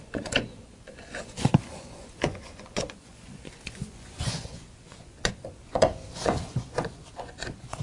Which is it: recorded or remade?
remade